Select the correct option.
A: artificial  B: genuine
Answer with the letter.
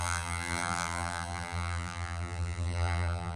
A